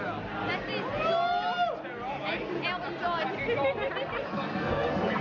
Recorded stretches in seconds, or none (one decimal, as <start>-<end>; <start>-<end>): 0.0-4.3